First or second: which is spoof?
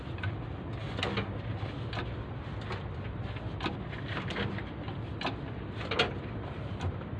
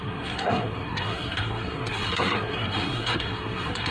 second